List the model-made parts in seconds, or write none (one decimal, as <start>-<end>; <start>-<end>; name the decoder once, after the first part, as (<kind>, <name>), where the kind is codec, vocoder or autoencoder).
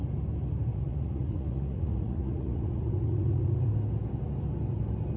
0.7-3.7 (vocoder, Vocos)